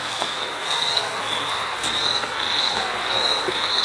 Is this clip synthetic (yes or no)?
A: yes